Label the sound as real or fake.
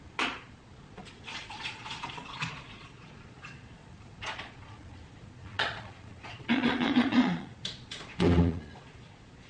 fake